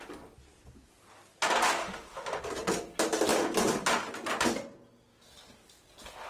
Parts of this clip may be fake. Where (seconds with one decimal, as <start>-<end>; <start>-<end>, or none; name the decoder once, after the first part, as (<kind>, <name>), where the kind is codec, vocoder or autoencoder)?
1.8-2.4 (autoencoder, DAC-VAE)